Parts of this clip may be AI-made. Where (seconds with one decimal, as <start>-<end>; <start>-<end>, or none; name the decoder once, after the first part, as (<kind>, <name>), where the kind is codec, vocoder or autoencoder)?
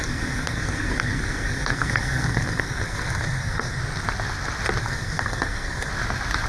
0.0-3.8 (codec, SNAC); 4.8-5.9